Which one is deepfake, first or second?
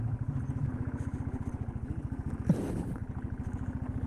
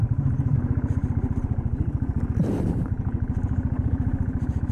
second